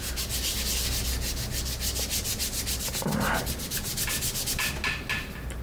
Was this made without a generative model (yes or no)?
yes